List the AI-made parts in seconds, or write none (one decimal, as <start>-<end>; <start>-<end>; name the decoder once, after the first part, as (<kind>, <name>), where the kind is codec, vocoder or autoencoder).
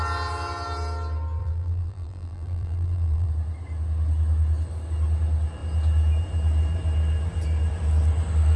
1.4-3.3 (vocoder, BigVGAN v2)